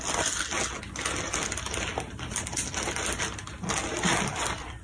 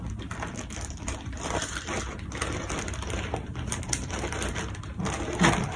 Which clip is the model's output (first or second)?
second